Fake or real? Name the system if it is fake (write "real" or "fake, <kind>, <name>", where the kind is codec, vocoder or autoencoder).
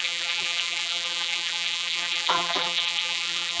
fake, vocoder, BigVGAN v2